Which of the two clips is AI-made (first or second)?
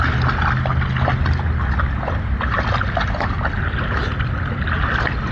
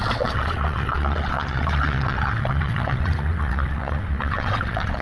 second